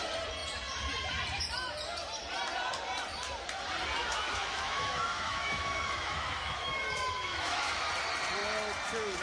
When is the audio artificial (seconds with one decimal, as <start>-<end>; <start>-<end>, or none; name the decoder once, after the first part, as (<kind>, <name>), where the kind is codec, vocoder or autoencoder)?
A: 4.0-7.9 (autoencoder, DAC-VAE)